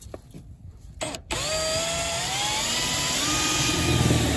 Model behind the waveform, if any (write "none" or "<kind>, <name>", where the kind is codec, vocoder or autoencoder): none